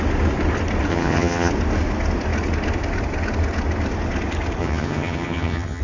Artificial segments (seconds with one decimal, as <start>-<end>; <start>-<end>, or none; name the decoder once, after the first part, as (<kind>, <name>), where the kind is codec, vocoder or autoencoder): 0.9-1.5 (vocoder, HiFi-GAN); 4.6-5.8